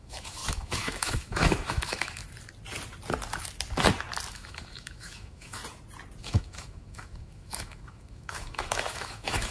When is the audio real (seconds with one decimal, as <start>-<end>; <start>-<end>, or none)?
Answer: 2.2-4.3; 5.6-6.2